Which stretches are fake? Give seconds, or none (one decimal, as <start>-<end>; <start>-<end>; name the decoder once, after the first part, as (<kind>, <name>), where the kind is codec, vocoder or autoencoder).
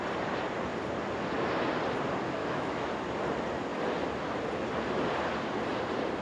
2.4-2.9 (autoencoder, DAC-VAE)